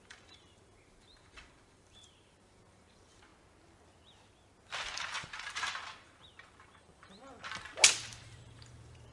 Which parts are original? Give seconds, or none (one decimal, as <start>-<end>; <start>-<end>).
3.3-5.1; 7.2-8.2

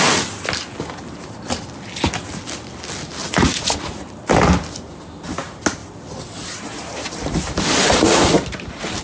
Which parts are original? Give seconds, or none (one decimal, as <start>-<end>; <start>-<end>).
0.0-3.2; 4.0-9.0

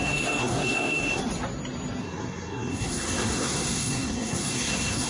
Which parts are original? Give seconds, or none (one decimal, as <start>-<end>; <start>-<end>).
1.2-2.0

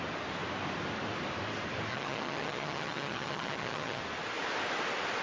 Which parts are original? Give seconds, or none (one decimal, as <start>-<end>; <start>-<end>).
0.0-1.9; 4.0-5.2